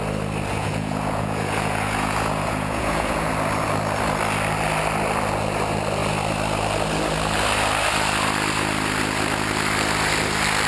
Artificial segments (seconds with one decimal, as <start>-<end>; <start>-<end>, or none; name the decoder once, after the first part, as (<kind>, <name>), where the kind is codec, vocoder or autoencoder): 0.5-3.3 (vocoder, Vocos)